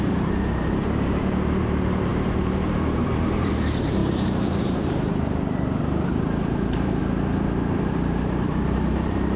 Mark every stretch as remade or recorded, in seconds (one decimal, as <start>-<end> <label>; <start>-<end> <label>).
0.0-7.0 remade; 7.0-7.9 recorded; 7.9-9.4 remade